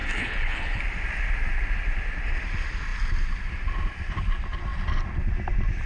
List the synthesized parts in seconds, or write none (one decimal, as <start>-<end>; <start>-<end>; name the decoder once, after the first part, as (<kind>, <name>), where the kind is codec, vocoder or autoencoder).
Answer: 0.0-0.8 (codec, HILCodec)